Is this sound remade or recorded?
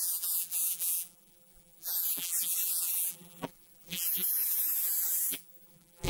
remade